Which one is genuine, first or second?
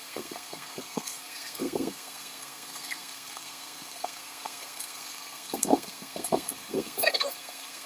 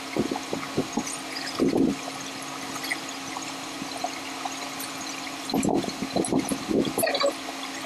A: second